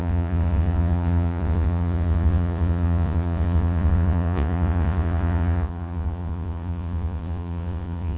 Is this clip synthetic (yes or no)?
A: yes